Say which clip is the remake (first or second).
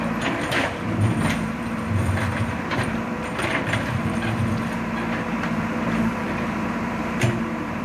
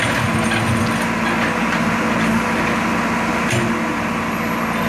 first